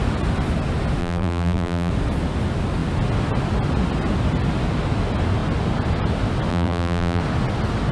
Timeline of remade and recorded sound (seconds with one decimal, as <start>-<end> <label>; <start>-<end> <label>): 0.0-1.0 recorded; 1.0-1.9 remade; 1.9-6.5 recorded; 6.5-7.2 remade; 7.2-7.9 recorded